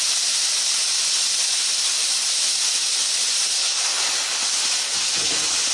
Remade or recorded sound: recorded